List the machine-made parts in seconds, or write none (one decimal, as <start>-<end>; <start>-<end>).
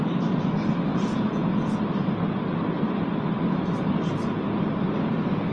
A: 0.9-1.8